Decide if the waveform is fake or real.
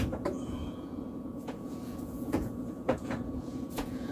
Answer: fake